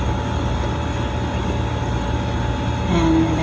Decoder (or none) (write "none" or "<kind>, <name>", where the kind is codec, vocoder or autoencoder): none